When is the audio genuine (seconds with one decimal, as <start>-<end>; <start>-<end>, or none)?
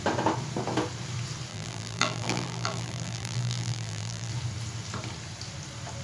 0.0-1.5; 4.3-6.0